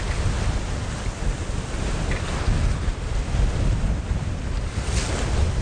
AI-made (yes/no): no